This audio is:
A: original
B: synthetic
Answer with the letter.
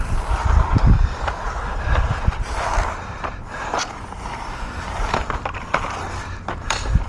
B